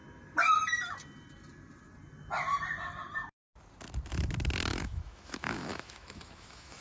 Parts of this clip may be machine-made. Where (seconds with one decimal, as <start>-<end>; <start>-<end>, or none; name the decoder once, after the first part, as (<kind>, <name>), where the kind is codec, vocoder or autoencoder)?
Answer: 4.7-6.8 (autoencoder, DAC-VAE)